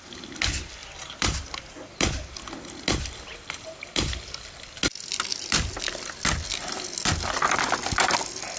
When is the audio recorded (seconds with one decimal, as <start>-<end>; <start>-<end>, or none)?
0.0-0.8; 1.4-5.3; 5.8-8.6